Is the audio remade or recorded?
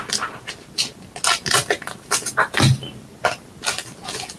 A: recorded